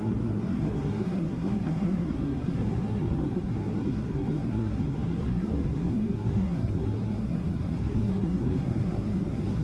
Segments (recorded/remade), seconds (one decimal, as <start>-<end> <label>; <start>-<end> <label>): 0.0-9.6 remade

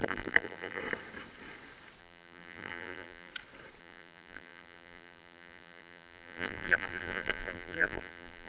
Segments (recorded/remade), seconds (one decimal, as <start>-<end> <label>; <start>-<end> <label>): 0.0-0.8 remade; 0.8-2.0 recorded; 2.0-3.3 remade; 3.3-3.8 recorded; 3.8-8.5 remade

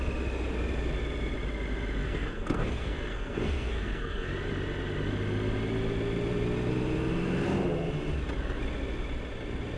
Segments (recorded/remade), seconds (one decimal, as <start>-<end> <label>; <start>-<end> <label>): 0.0-2.0 recorded; 2.0-4.3 remade; 4.3-9.8 recorded

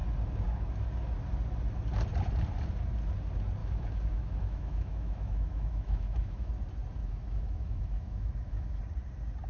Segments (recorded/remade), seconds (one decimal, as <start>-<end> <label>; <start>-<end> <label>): 0.0-3.6 recorded; 3.6-6.5 remade; 6.5-7.0 recorded; 7.0-8.8 remade; 8.8-9.5 recorded

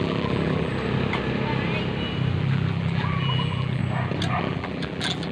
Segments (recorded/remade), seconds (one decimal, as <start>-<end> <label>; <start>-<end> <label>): 0.0-0.7 remade; 0.7-2.4 recorded; 2.4-3.8 remade; 3.8-4.4 recorded; 4.4-5.3 remade